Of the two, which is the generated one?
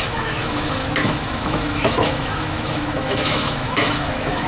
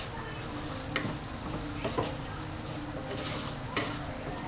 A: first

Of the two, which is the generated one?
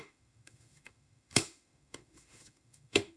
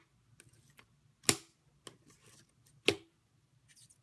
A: first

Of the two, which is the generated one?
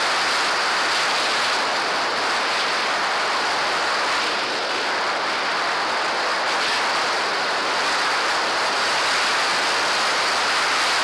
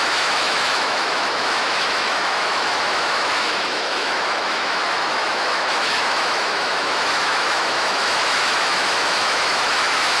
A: second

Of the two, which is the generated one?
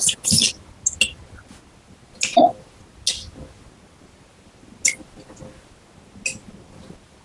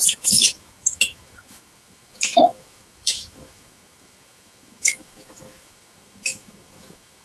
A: second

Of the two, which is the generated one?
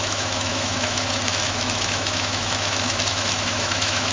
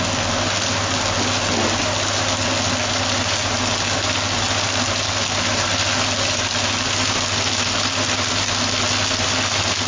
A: first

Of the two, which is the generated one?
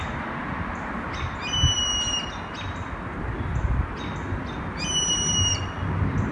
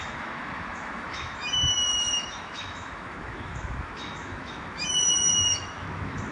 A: second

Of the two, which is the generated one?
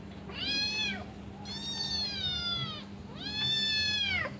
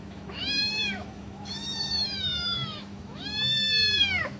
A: second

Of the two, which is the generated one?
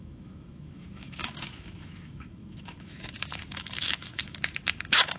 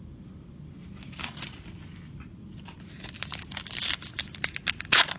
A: first